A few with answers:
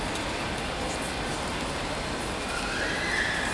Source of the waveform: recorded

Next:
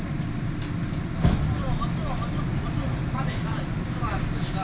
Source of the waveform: recorded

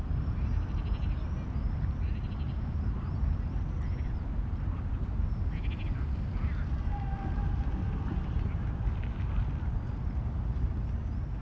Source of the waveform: recorded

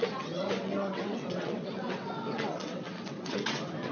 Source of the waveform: remade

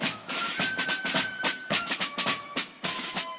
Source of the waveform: remade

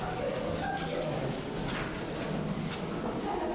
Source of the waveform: recorded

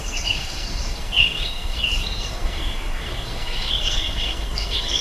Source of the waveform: remade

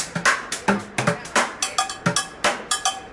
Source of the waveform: recorded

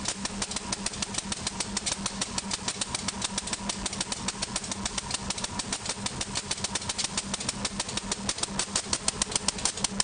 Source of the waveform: recorded